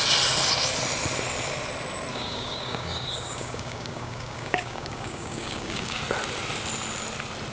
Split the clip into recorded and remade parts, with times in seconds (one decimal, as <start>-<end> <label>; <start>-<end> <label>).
0.0-2.1 recorded; 2.1-6.0 remade; 6.0-7.5 recorded